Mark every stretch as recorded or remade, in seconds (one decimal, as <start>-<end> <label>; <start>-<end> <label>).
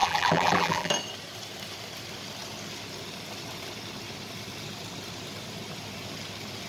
0.0-0.9 remade; 0.9-6.7 recorded